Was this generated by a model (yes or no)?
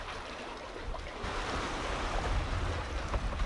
yes